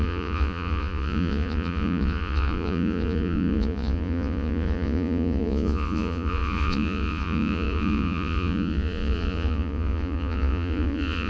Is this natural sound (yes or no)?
no